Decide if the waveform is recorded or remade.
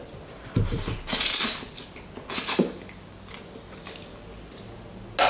recorded